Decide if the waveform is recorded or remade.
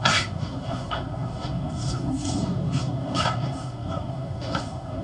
remade